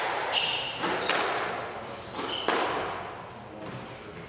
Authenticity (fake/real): real